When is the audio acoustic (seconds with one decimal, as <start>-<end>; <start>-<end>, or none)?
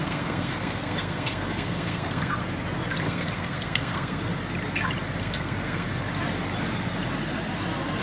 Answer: 2.4-3.0; 4.3-5.2; 5.9-8.0